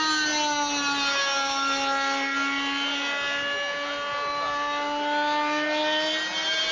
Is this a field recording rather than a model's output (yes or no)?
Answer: yes